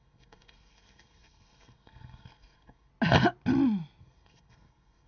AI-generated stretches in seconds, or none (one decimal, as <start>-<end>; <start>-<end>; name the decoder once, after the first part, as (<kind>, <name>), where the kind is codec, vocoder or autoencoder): 0.0-2.9 (codec, SNAC); 4.0-5.1